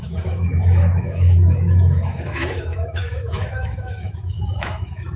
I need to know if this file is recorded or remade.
remade